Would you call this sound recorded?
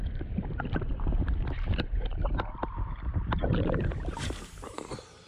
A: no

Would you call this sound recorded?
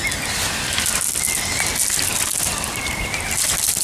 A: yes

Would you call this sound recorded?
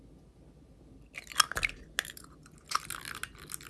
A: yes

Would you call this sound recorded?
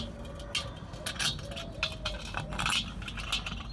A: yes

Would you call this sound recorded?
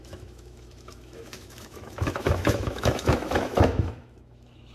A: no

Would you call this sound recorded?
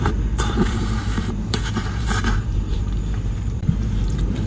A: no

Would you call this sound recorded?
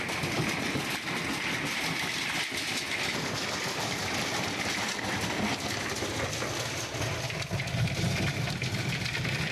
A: yes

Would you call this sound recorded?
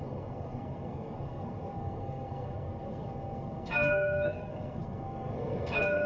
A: no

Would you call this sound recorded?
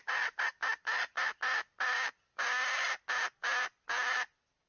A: yes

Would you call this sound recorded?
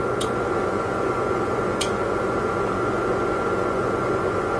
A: no